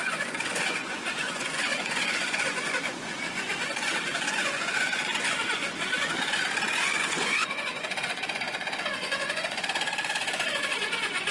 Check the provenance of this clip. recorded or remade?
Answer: remade